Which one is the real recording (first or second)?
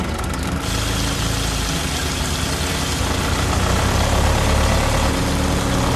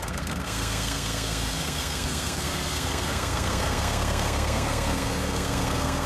first